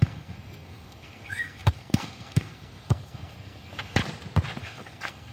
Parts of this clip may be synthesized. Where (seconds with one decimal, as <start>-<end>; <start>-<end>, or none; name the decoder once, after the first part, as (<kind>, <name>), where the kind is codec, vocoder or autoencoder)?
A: 0.0-4.0 (codec, SNAC); 4.6-5.3